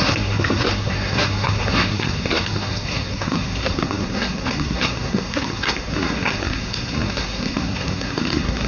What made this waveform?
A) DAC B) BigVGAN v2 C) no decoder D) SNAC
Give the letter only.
D